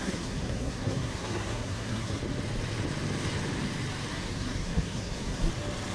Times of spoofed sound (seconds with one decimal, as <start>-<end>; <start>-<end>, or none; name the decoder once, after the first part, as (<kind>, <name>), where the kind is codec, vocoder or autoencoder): 0.0-2.2 (codec, SNAC); 4.1-5.5